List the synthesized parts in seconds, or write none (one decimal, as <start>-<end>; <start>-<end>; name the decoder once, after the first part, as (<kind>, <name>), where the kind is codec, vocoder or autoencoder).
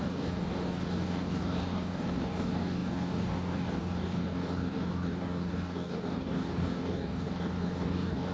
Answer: 0.0-8.3 (codec, DAC)